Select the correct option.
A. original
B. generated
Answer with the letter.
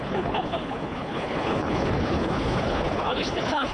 B